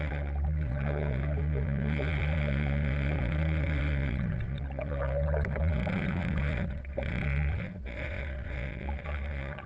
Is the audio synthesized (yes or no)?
yes